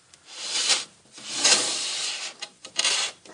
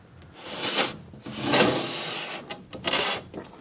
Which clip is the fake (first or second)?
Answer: first